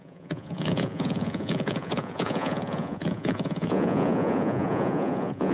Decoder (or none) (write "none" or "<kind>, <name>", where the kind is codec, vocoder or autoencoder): vocoder, Vocos